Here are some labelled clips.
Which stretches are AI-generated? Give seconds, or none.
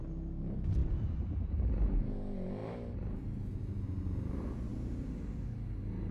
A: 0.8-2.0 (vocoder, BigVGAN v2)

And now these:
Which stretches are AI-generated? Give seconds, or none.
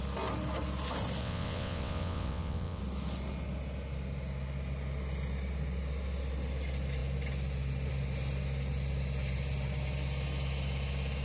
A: 1.2-2.8 (vocoder, WaveNeXt)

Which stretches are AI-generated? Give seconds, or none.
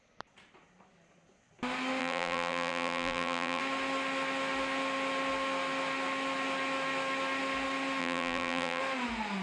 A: 2.0-3.6 (vocoder, BigVGAN v2); 8.0-8.8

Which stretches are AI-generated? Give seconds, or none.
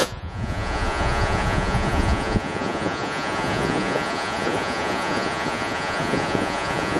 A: 0.0-7.0 (vocoder, Vocos)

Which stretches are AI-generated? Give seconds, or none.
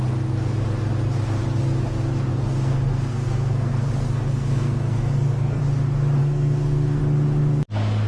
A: 2.3-5.6 (codec, SNAC); 6.2-7.0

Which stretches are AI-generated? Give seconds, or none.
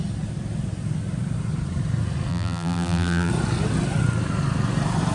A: 2.3-3.3 (vocoder, BigVGAN v2)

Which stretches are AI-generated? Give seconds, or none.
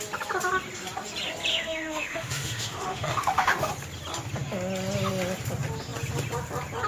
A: 1.5-3.7 (autoencoder, DAC-VAE)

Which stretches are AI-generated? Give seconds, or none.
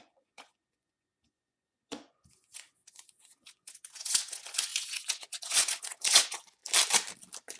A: 0.0-6.6 (vocoder, Vocos)